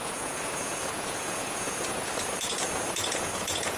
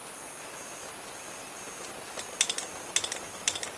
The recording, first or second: second